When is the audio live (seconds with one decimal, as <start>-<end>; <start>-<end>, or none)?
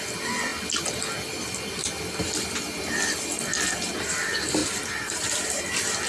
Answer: 0.0-4.6; 5.6-6.1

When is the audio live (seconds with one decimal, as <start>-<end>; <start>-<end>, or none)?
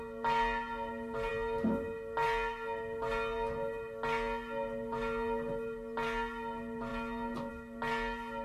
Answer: 0.0-8.4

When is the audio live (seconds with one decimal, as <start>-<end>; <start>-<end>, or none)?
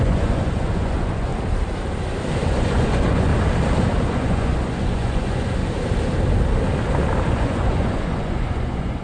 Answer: 1.3-2.5; 3.3-4.1; 5.6-7.3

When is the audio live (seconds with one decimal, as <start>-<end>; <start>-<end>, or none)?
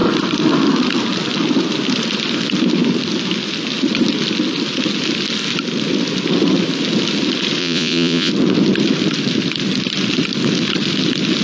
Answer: 0.0-7.6; 8.3-11.4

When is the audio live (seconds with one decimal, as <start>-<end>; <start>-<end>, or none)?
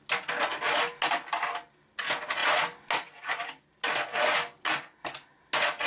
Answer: 0.0-5.9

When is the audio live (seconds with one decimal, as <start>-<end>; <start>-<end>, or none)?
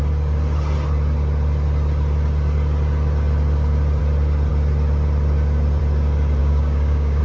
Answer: 0.0-6.4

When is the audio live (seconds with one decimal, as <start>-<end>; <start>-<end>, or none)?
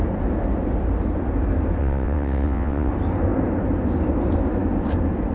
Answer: 0.0-1.8; 2.9-5.3